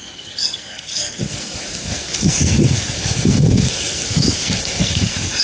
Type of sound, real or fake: fake